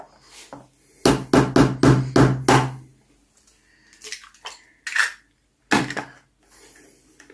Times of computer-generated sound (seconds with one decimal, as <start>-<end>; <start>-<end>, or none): none